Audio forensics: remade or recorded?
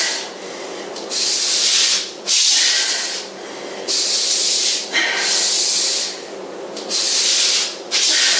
recorded